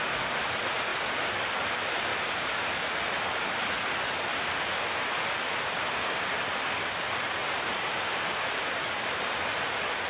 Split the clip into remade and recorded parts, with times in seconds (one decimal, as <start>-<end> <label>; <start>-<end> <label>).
0.0-0.9 recorded; 0.9-1.5 remade; 1.5-2.1 recorded; 2.1-2.7 remade; 2.7-7.4 recorded; 7.4-9.5 remade; 9.5-10.1 recorded